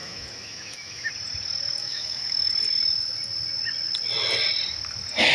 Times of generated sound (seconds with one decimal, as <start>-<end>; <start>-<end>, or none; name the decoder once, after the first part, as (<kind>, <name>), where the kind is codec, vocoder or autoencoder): 0.0-1.1 (autoencoder, DAC-VAE); 1.8-2.5